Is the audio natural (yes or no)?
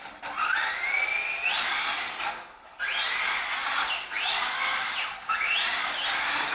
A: yes